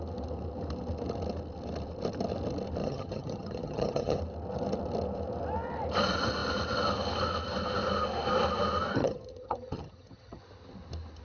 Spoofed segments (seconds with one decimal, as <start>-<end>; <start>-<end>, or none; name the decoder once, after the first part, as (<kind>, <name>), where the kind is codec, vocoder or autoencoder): 2.8-4.2 (vocoder, HiFi-GAN); 9.0-10.4